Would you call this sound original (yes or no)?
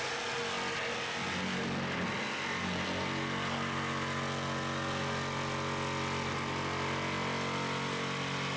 yes